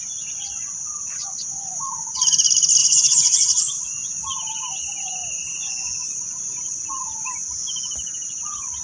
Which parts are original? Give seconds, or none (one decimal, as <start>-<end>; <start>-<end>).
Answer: 0.0-2.8; 3.9-8.8